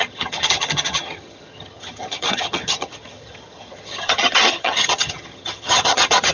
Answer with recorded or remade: remade